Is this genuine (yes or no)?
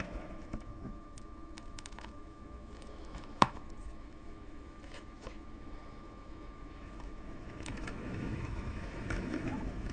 no